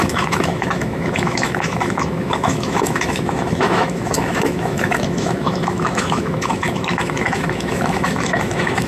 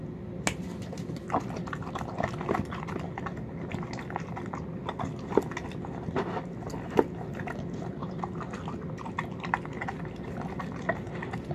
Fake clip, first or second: first